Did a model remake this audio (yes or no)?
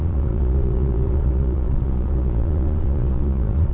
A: yes